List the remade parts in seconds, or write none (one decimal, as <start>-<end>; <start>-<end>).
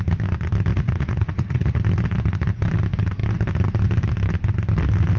0.7-1.8